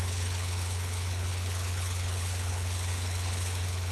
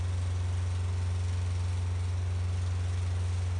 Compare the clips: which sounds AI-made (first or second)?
first